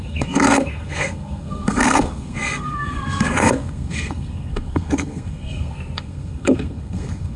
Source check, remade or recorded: remade